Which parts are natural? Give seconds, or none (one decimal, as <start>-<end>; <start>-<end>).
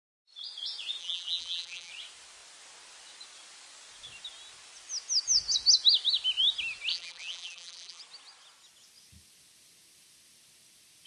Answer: 0.0-1.0; 1.9-6.9; 8.0-11.1